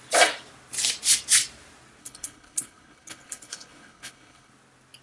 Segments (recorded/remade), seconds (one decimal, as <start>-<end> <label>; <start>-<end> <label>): 0.0-2.0 recorded; 2.0-4.5 remade; 4.5-5.0 recorded